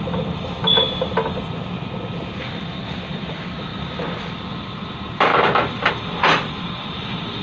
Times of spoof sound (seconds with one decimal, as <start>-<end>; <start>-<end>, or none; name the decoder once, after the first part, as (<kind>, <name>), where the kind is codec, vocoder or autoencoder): none